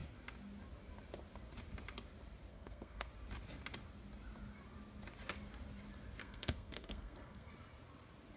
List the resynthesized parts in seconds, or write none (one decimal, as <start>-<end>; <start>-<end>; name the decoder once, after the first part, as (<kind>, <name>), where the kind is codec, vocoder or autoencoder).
2.5-3.1 (codec, SNAC); 6.2-7.5